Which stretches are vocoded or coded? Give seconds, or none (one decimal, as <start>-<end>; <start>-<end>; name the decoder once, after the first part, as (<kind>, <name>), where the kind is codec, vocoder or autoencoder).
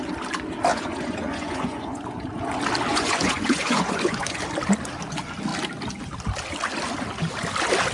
0.7-2.2 (vocoder, Vocos); 2.9-4.4